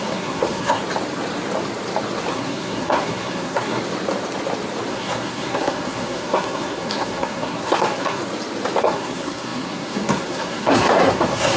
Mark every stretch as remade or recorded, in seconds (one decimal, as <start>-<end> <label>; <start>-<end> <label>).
0.0-0.8 remade; 0.8-2.3 recorded; 2.3-3.8 remade; 3.8-4.9 recorded; 4.9-8.2 remade; 8.2-8.8 recorded; 8.8-11.6 remade